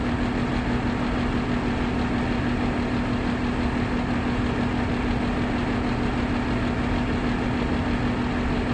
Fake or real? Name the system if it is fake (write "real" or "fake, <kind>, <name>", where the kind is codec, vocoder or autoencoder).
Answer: real